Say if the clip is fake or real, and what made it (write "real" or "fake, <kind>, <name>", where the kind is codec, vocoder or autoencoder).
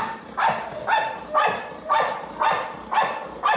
fake, vocoder, BigVGAN v2